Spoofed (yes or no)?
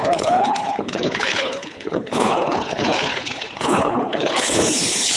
yes